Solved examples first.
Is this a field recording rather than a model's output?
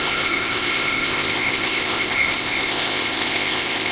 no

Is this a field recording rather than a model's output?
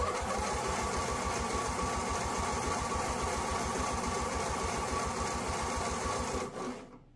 yes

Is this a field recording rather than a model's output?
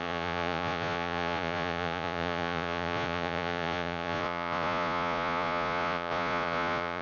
no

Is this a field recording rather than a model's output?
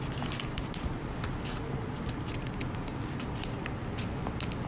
yes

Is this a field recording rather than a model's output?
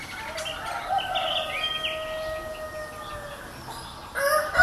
yes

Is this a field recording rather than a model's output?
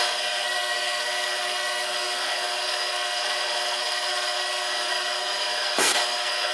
no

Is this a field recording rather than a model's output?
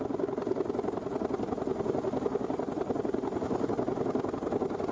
yes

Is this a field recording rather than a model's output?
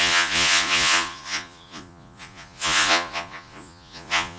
no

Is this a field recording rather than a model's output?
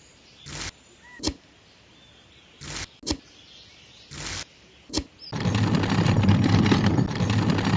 yes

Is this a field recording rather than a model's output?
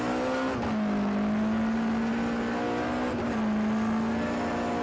yes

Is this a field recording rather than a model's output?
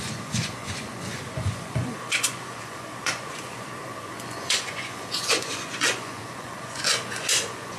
no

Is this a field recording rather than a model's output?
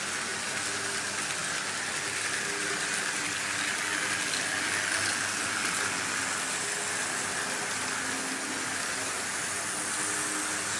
yes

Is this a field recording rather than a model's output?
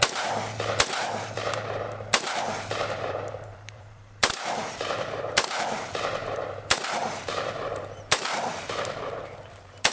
no